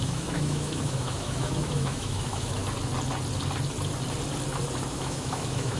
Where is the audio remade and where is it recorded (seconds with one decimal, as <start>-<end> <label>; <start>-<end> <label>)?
0.0-2.6 remade; 2.6-4.9 recorded; 4.9-5.8 remade